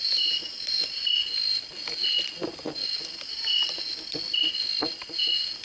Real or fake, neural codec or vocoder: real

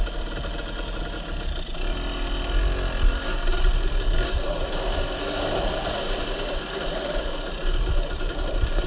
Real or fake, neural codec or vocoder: real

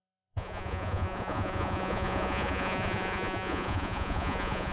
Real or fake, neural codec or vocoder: fake, vocoder, Vocos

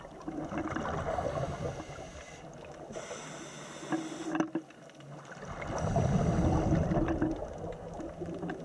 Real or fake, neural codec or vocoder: real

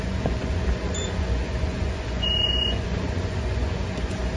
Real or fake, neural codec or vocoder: fake, vocoder, Vocos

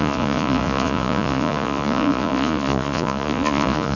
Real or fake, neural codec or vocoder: fake, vocoder, Vocos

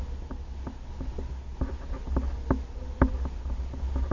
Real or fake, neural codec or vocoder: real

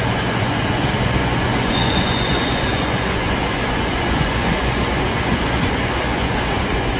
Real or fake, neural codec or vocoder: fake, vocoder, Vocos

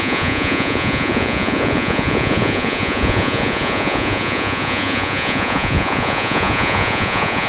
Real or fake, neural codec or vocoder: fake, vocoder, Vocos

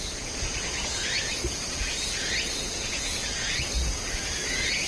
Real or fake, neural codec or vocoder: fake, vocoder, Vocos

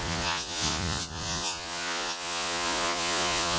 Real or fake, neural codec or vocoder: fake, vocoder, Vocos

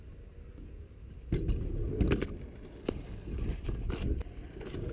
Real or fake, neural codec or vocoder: real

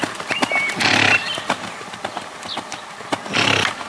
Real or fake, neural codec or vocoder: real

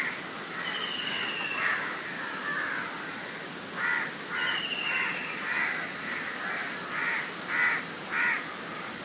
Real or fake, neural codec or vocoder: real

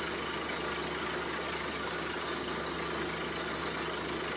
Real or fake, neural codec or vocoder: real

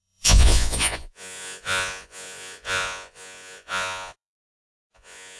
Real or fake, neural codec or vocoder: fake, vocoder, Vocos